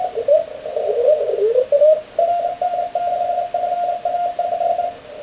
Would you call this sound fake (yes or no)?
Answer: no